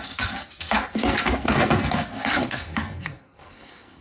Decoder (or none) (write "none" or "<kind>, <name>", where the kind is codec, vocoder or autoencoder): codec, SNAC